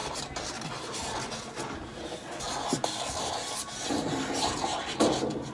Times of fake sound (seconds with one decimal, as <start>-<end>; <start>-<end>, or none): none